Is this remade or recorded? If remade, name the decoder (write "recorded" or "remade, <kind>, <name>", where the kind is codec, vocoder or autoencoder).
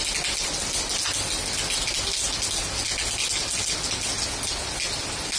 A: recorded